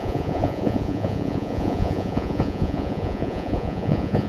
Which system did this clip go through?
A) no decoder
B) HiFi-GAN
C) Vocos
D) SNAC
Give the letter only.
C